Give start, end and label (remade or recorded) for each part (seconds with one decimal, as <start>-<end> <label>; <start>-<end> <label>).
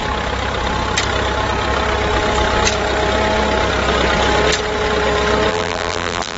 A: 0.0-5.5 recorded; 5.5-6.4 remade